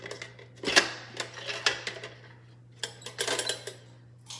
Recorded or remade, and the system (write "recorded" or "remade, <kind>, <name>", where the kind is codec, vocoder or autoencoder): recorded